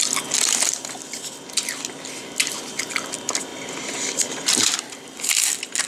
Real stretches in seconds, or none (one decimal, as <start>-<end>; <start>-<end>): none